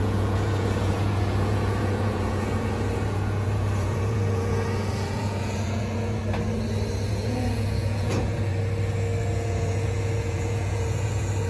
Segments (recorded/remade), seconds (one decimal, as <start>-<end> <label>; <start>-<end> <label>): 0.0-6.2 remade; 6.2-7.1 recorded; 7.1-8.5 remade; 8.5-9.2 recorded; 9.2-11.5 remade